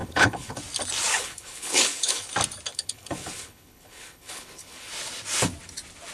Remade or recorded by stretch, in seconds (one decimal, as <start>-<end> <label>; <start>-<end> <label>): 0.0-0.6 remade; 0.6-1.1 recorded; 1.1-2.3 remade; 2.3-2.7 recorded; 2.7-4.9 remade; 4.9-6.1 recorded